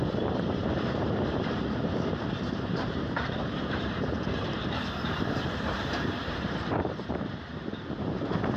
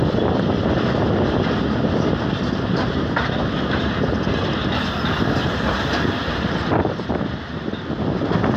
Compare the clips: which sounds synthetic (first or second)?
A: first